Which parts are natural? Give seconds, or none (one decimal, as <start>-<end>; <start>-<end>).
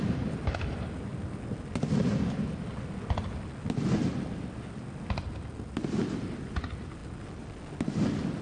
0.0-8.4